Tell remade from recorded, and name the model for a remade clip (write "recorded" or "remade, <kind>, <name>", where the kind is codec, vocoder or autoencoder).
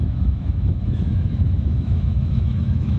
remade, autoencoder, DAC-VAE